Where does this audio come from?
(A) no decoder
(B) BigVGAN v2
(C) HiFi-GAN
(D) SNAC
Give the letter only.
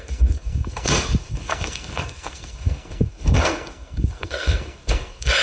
D